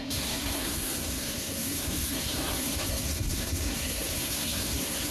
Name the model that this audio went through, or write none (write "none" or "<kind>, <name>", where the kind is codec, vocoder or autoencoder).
codec, SNAC